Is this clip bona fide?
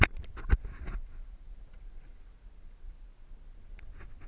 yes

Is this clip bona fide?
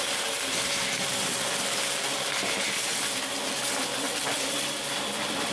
no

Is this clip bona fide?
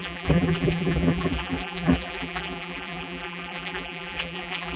no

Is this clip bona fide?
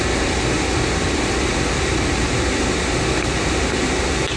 no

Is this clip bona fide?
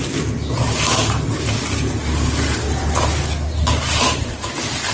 yes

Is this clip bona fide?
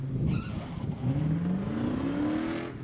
yes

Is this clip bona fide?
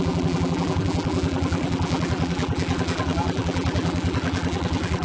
no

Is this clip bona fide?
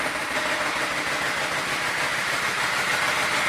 yes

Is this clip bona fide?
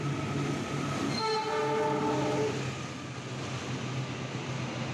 yes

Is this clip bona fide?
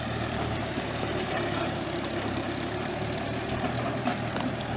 no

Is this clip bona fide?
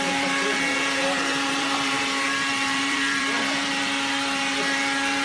no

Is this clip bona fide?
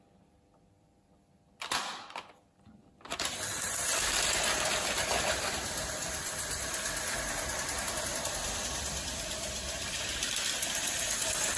no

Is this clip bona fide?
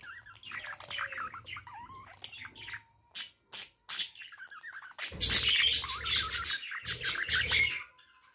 yes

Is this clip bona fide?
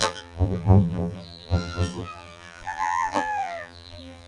no